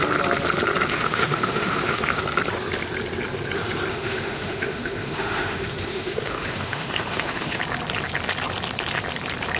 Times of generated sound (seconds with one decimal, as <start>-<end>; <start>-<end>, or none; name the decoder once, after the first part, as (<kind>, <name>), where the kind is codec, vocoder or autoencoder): 0.9-2.2 (autoencoder, DAC-VAE); 3.9-7.6